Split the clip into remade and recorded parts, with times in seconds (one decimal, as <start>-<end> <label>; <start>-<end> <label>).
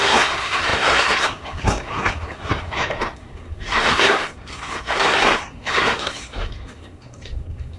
0.0-7.8 remade